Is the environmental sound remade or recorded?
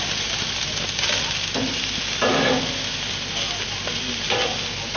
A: recorded